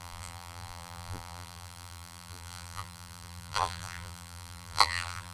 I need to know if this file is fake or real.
fake